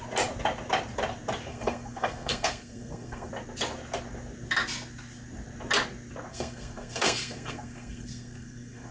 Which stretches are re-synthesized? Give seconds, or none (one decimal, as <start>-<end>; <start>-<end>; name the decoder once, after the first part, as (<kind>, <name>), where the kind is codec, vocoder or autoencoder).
1.5-3.3 (codec, SNAC); 6.3-8.9